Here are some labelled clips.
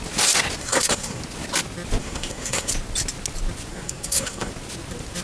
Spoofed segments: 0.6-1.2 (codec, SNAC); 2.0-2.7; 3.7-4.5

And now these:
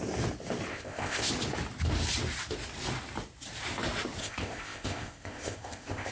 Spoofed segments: 0.7-1.3 (codec, ZipCodec); 4.2-6.1

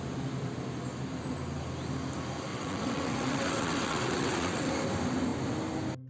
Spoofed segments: 2.5-4.7 (vocoder, WaveNeXt)

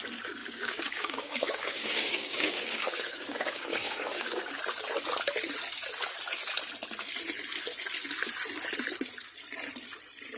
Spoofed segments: 0.4-4.6 (codec, DAC)